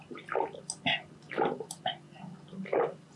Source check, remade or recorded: recorded